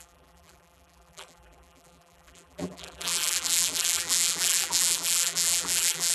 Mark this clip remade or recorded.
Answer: remade